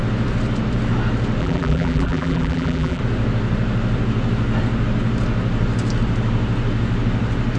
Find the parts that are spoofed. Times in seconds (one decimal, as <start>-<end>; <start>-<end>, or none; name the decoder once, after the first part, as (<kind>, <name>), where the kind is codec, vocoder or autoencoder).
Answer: 1.4-3.0 (vocoder, BigVGAN v2)